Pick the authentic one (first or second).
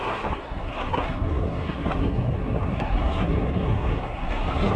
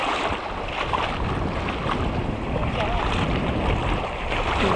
second